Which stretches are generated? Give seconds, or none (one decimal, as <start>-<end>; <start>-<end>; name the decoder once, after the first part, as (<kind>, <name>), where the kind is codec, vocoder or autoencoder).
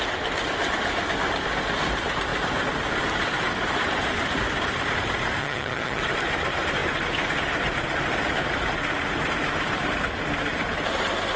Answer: 5.4-6.0 (vocoder, HiFi-GAN)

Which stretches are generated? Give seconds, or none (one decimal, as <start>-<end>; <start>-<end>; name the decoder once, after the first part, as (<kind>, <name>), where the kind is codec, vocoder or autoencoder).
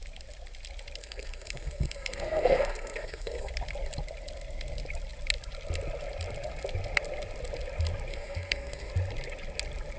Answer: 1.0-3.5 (codec, SNAC); 8.1-8.9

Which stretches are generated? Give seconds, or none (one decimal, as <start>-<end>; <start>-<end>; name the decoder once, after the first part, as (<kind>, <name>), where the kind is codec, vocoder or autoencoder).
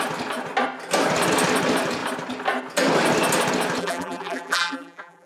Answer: 3.8-5.3 (vocoder, BigVGAN v2)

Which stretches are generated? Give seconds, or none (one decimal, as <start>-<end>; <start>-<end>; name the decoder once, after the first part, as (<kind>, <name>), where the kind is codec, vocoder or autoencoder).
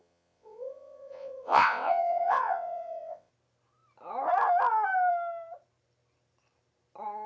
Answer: 0.0-3.3 (vocoder, WaveNeXt)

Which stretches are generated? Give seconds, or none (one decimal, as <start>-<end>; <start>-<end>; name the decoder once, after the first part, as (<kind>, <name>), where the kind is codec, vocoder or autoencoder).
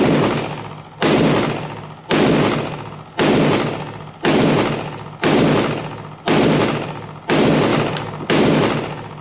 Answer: none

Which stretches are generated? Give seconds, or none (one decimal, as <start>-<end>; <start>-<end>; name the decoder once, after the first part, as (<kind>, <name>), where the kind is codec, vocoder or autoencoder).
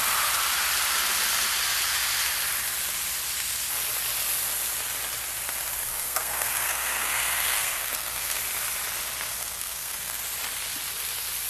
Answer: 5.9-8.4 (codec, SNAC); 9.4-10.2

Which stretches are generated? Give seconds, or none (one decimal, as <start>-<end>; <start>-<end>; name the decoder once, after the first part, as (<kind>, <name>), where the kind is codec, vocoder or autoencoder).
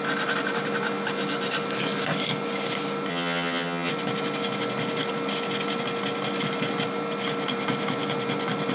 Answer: 3.1-3.9 (vocoder, HiFi-GAN)